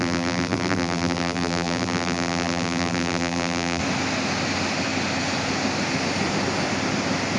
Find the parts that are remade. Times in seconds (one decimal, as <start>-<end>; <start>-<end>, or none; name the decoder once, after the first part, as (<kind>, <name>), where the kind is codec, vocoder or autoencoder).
0.0-3.8 (vocoder, BigVGAN v2)